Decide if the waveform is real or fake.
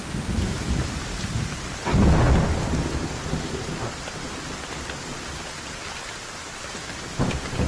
real